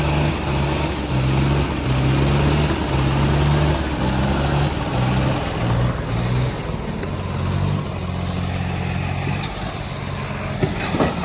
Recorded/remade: recorded